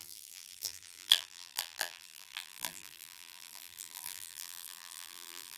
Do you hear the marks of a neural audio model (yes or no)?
yes